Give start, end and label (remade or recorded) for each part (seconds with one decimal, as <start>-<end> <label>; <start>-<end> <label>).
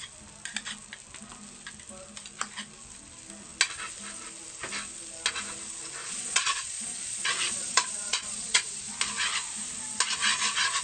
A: 0.0-6.0 recorded; 6.0-8.7 remade; 8.7-10.8 recorded